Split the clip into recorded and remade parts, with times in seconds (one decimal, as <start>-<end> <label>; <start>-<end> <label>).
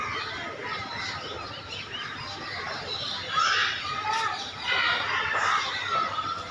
0.0-0.6 recorded; 0.6-4.5 remade; 4.5-6.5 recorded